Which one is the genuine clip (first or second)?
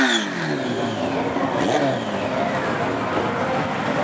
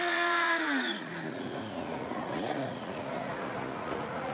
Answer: first